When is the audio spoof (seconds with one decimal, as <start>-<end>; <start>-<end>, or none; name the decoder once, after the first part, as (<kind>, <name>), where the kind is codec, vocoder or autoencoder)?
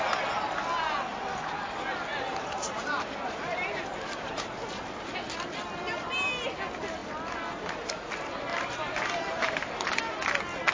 2.1-4.6 (vocoder, BigVGAN v2); 8.5-10.0